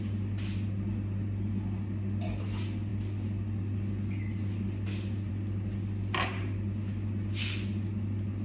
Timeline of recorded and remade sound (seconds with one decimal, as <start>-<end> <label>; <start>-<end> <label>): 0.0-8.4 recorded